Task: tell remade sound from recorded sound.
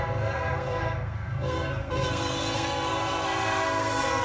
remade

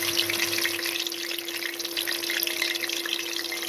recorded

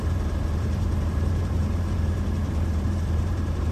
remade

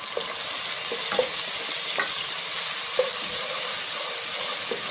recorded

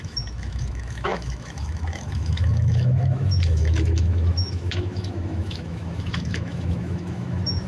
remade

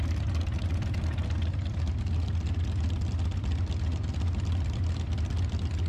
recorded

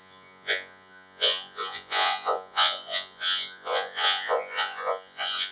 remade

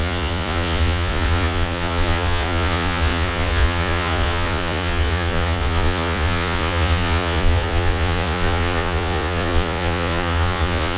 remade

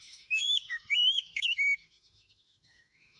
remade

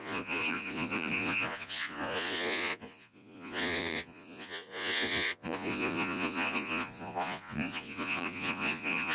remade